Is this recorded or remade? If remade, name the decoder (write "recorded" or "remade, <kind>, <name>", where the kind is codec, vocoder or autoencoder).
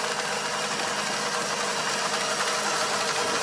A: recorded